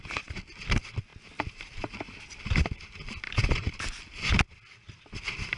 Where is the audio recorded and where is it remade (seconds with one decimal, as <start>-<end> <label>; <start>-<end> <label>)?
0.0-5.6 recorded